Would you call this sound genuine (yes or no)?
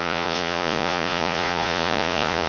no